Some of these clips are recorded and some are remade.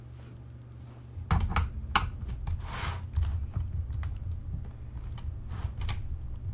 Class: recorded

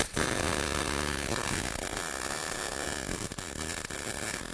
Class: recorded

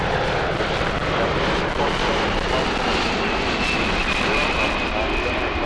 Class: recorded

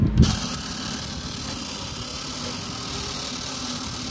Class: recorded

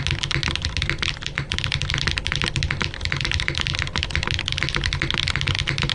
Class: recorded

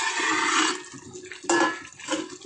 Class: recorded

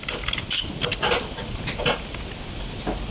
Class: recorded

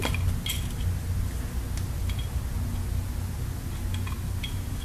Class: recorded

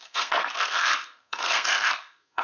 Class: remade